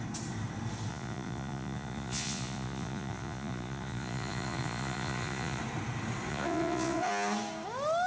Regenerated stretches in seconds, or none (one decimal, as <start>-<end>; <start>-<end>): 0.9-5.6; 6.3-7.1